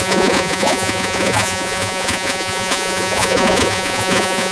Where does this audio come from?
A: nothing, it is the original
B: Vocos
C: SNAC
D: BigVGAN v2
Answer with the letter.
B